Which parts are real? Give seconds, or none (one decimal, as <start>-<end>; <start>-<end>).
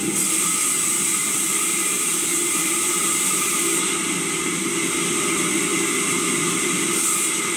0.0-1.2; 4.6-7.6